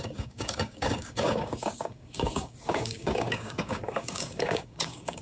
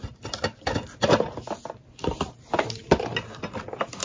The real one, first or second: second